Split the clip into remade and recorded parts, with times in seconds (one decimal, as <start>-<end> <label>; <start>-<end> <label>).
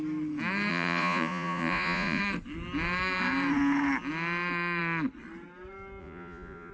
0.0-0.7 recorded; 0.7-2.2 remade; 2.2-6.0 recorded; 6.0-6.7 remade